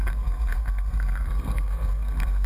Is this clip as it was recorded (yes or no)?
no